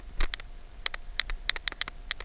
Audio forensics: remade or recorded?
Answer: recorded